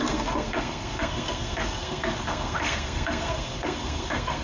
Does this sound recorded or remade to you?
remade